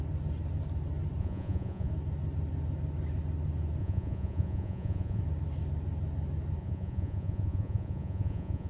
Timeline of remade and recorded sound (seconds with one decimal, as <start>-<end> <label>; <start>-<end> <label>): 0.0-1.2 recorded; 1.2-1.9 remade; 1.9-3.8 recorded; 3.8-5.2 remade; 5.2-6.6 recorded; 6.6-8.7 remade